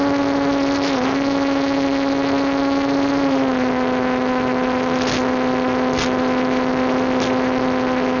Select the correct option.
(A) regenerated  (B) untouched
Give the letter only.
B